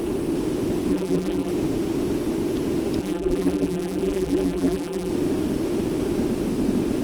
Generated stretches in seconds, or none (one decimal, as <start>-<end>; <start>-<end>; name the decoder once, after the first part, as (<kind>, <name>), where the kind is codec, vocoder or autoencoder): 0.9-1.5 (vocoder, BigVGAN v2); 3.0-5.1